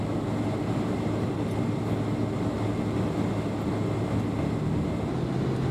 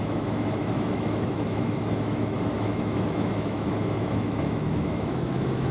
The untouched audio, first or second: first